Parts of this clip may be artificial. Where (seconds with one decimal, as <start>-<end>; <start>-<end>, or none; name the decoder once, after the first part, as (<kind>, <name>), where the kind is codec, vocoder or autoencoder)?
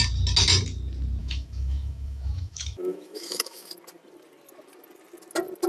1.2-3.7 (autoencoder, DAC-VAE)